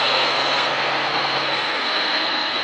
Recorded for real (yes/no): no